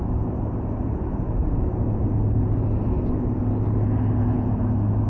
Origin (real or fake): real